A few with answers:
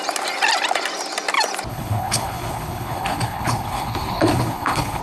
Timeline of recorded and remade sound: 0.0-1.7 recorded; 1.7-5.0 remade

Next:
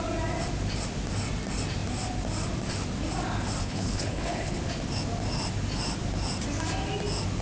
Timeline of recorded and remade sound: 0.0-3.6 recorded; 3.6-4.6 remade; 4.6-7.4 recorded

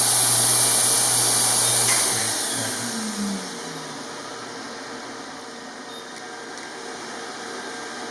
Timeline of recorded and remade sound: 0.0-8.1 recorded

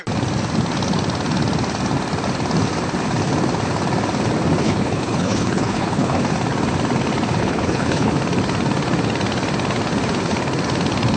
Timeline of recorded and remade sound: 0.0-4.6 recorded; 4.6-6.2 remade; 6.2-7.4 recorded; 7.4-8.1 remade; 8.1-11.2 recorded

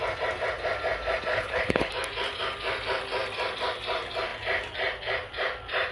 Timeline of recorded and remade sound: 0.0-1.3 recorded; 1.3-1.9 remade; 1.9-5.9 recorded

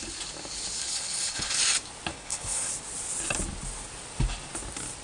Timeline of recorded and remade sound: 0.0-0.8 recorded; 0.8-1.6 remade; 1.6-2.1 recorded; 2.1-2.7 remade; 2.7-5.0 recorded

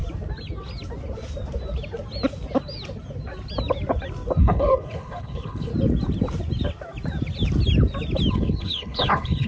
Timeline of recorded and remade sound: 0.0-4.4 recorded; 4.4-5.7 remade; 5.7-8.3 recorded; 8.3-9.5 remade